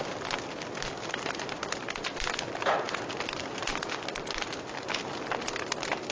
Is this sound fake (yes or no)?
no